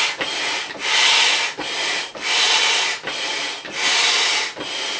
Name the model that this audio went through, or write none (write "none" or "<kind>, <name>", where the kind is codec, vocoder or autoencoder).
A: none